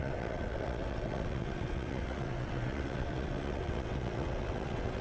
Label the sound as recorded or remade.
remade